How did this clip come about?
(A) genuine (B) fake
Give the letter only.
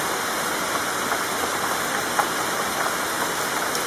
A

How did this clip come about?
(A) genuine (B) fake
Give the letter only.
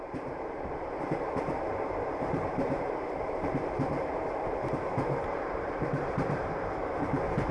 B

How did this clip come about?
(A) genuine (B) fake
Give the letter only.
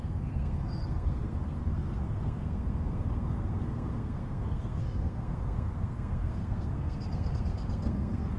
B